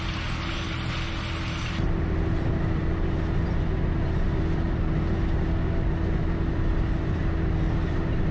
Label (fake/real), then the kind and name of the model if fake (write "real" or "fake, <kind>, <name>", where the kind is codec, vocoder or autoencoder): real